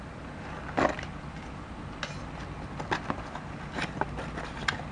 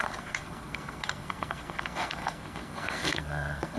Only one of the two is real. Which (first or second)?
first